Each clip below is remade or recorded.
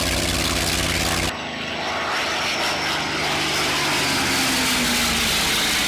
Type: recorded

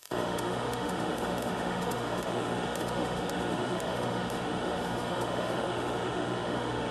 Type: remade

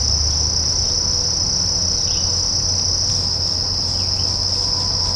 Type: recorded